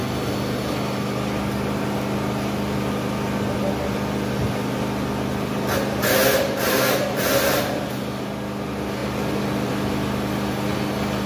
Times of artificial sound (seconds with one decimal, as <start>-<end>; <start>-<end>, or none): none